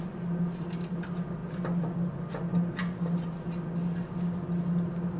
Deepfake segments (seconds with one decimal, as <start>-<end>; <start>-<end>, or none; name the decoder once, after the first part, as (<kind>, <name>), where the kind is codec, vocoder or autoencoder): none